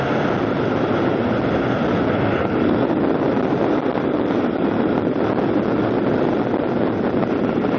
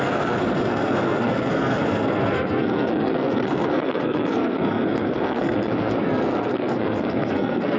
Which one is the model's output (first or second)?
second